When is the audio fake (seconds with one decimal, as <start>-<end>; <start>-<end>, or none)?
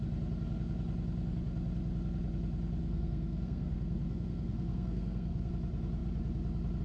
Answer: 2.8-5.5